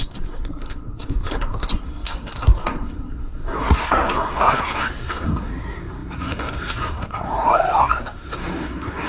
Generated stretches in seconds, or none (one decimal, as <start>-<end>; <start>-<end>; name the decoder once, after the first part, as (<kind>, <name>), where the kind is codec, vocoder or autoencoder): 0.0-9.1 (codec, SNAC)